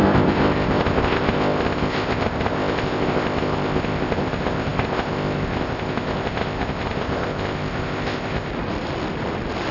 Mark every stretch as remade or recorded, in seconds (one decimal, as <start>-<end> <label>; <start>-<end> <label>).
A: 0.0-8.5 remade; 8.5-9.7 recorded